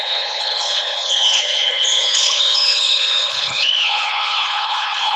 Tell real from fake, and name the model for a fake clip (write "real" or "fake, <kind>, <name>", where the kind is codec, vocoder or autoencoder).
fake, codec, HILCodec